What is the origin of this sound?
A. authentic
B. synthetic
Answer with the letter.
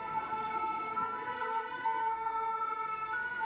B